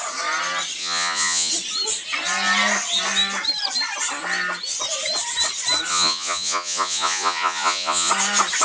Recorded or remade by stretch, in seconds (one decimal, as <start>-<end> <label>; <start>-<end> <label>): 0.0-0.8 recorded; 0.8-1.5 remade; 1.5-5.9 recorded; 5.9-8.1 remade; 8.1-8.6 recorded